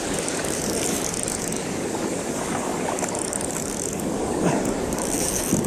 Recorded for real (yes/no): no